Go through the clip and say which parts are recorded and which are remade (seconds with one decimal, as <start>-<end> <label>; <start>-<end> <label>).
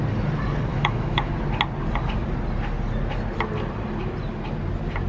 0.0-0.7 recorded; 0.7-1.3 remade; 1.3-5.1 recorded